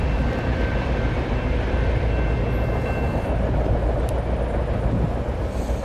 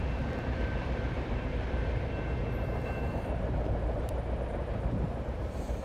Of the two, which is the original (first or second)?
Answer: first